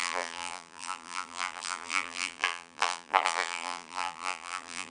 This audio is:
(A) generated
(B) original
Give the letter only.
A